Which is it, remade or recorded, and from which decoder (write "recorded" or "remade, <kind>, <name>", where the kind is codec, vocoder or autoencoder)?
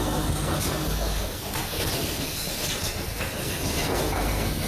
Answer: remade, codec, SNAC